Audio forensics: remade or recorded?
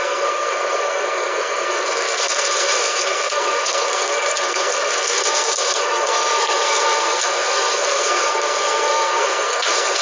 remade